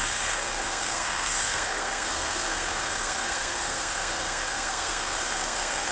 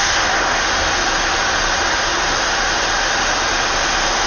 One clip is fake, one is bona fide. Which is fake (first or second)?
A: first